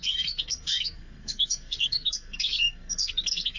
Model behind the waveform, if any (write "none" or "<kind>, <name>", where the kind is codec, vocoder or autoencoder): codec, SNAC